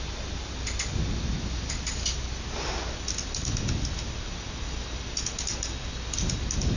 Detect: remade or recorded recorded